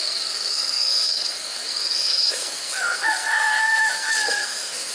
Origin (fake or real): fake